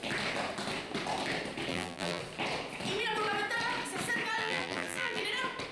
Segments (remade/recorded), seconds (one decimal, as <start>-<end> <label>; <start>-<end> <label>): 0.0-1.7 recorded; 1.7-2.2 remade; 2.2-4.4 recorded; 4.4-5.2 remade; 5.2-5.7 recorded